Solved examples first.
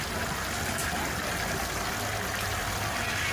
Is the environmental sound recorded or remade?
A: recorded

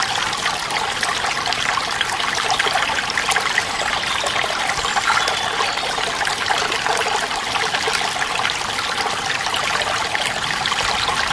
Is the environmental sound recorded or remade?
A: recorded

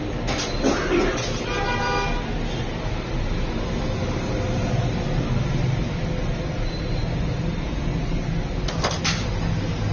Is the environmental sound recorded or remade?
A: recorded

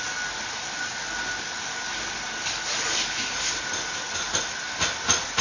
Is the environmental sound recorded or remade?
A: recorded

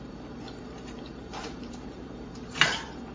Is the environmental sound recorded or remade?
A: remade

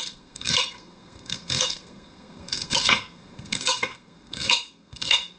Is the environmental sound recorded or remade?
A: remade